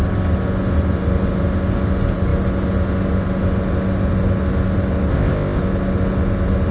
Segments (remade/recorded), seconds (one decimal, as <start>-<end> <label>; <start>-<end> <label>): 0.0-5.1 recorded; 5.1-5.6 remade; 5.6-6.7 recorded

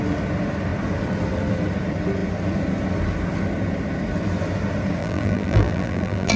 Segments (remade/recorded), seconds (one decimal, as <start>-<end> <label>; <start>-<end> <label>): 0.0-5.0 recorded; 5.0-6.4 remade

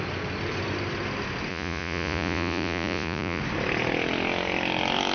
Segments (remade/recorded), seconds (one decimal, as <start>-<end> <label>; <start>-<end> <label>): 0.0-1.5 recorded; 1.5-3.4 remade; 3.4-5.1 recorded

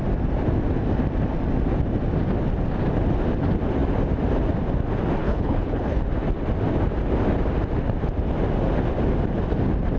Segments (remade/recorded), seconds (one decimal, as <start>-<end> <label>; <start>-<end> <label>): 0.0-5.2 recorded; 5.2-6.0 remade; 6.0-10.0 recorded